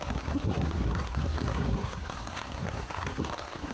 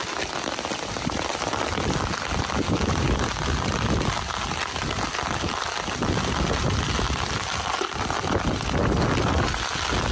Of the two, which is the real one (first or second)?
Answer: second